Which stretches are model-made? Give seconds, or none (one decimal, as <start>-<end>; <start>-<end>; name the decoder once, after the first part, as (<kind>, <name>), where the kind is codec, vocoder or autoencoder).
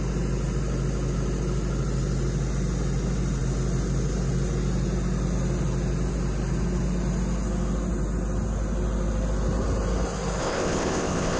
10.4-11.4 (codec, ZipCodec)